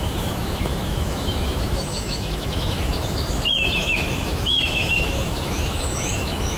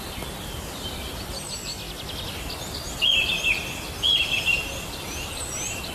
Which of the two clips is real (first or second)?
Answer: second